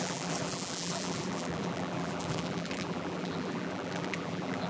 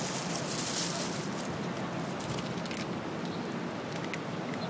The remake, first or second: first